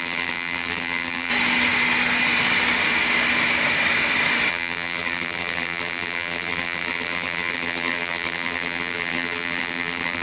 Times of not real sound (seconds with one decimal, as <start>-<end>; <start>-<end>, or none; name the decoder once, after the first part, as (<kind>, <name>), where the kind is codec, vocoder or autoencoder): 0.0-1.3 (vocoder, BigVGAN v2); 4.5-10.2